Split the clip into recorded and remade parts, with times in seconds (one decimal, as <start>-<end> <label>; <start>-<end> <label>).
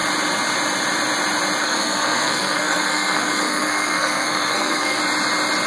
0.0-1.6 recorded; 1.6-5.0 remade; 5.0-5.7 recorded